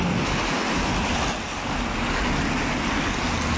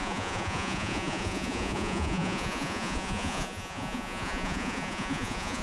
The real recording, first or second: first